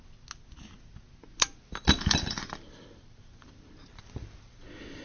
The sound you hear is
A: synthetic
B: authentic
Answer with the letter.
B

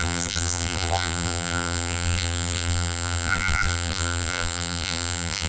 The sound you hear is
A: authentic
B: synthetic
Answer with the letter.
B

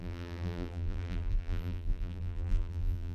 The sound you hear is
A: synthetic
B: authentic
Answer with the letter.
A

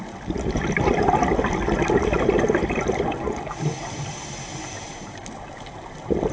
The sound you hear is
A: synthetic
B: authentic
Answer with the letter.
B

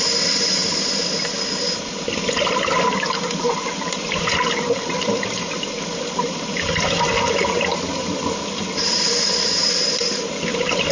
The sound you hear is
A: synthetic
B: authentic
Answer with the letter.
B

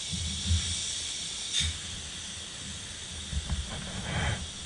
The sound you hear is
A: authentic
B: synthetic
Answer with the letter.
A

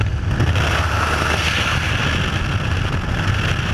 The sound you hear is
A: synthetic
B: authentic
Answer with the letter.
B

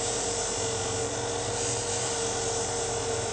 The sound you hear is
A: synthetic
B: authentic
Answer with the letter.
B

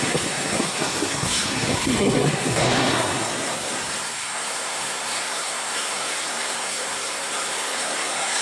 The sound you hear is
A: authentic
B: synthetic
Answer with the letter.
B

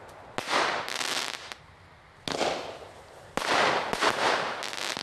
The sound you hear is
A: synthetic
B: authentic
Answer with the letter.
B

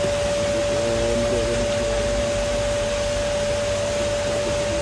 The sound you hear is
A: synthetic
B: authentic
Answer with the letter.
B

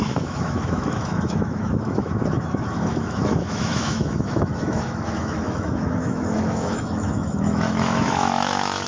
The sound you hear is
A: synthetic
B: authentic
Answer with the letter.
A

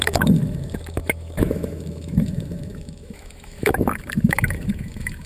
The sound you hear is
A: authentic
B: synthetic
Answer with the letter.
B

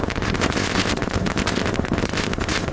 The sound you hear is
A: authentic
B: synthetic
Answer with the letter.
B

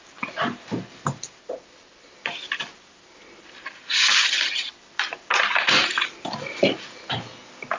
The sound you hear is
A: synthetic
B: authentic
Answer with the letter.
B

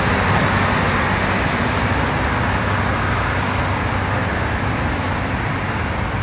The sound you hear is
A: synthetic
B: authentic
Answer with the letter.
B